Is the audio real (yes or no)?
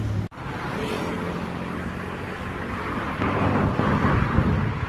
yes